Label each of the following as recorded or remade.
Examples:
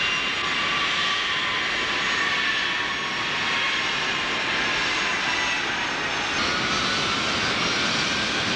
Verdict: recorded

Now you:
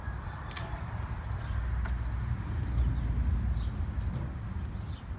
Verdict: recorded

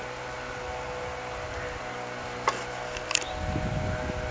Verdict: recorded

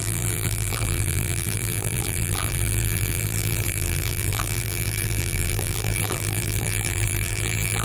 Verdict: remade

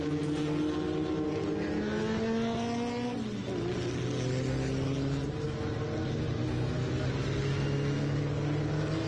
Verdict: recorded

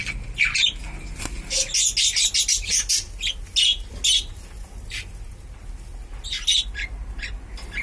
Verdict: recorded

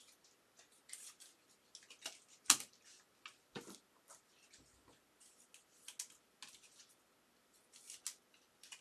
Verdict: recorded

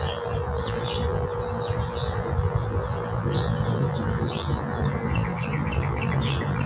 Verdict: remade